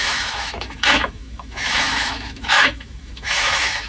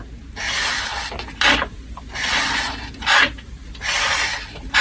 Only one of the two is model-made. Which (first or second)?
first